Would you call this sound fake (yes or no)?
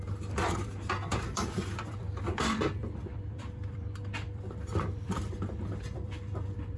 yes